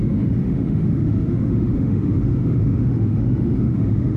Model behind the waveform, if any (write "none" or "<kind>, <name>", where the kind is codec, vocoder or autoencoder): autoencoder, DAC-VAE